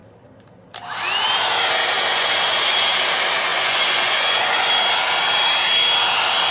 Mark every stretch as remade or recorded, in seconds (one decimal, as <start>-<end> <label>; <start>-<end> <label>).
0.0-2.1 recorded; 2.1-2.9 remade; 2.9-3.5 recorded; 3.5-4.7 remade; 4.7-6.5 recorded